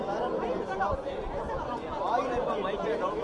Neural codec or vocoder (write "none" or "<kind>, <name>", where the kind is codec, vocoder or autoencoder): none